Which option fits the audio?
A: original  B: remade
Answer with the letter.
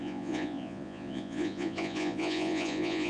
B